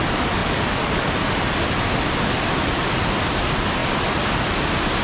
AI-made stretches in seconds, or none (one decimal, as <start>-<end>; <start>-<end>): none

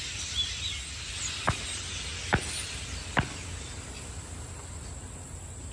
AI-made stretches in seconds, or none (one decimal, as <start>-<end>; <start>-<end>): none